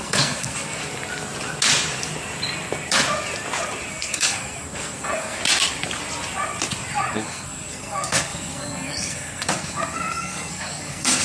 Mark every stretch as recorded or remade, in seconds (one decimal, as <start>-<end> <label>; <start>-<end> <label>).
0.0-0.8 remade; 0.8-3.9 recorded; 3.9-5.4 remade; 5.4-7.1 recorded; 7.1-11.2 remade

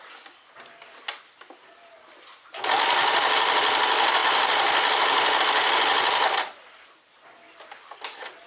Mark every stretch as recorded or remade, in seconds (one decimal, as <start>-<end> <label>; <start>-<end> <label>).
0.0-8.5 recorded

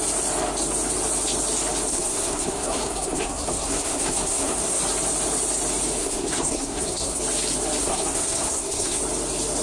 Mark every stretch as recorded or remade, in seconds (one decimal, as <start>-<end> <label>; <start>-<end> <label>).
0.0-1.9 recorded; 1.9-4.8 remade; 4.8-6.0 recorded; 6.0-7.2 remade; 7.2-7.8 recorded; 7.8-9.0 remade; 9.0-9.6 recorded

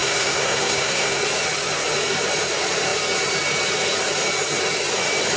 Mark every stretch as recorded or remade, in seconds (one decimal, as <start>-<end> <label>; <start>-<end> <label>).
0.0-1.2 remade; 1.2-5.4 recorded

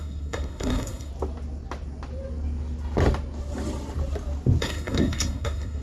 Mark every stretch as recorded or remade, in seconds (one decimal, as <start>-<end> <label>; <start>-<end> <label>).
0.0-1.1 remade; 1.1-4.6 recorded; 4.6-5.8 remade

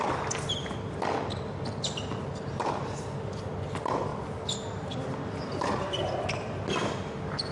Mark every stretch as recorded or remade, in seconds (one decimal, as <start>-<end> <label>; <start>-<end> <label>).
0.0-7.5 recorded

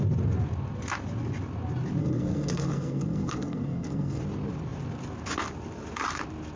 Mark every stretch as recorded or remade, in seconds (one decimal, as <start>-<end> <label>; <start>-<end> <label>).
0.0-2.0 recorded; 2.0-4.2 remade; 4.2-6.6 recorded